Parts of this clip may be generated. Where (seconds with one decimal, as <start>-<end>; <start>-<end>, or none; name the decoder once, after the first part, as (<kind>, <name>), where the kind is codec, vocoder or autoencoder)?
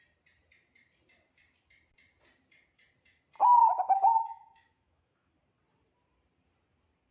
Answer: 3.6-5.3 (autoencoder, DAC-VAE)